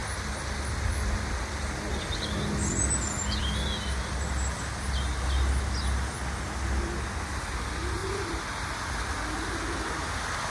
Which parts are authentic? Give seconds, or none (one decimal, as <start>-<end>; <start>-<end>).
0.0-8.0; 8.5-10.5